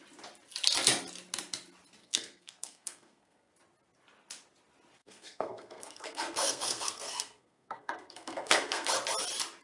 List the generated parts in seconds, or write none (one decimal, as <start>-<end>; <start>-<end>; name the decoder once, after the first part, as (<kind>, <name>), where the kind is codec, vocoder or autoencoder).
2.0-3.5 (codec, SNAC); 5.0-8.9